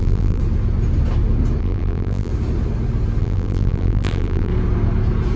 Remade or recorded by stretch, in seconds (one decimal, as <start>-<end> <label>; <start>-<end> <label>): 0.0-0.4 remade; 0.4-1.6 recorded; 1.6-2.3 remade; 2.3-3.2 recorded; 3.2-4.5 remade; 4.5-5.4 recorded